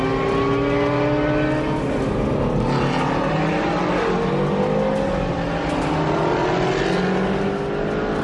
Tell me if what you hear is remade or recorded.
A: recorded